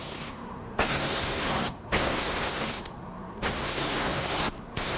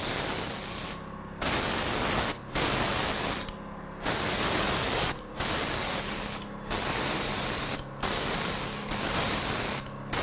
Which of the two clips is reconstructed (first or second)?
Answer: first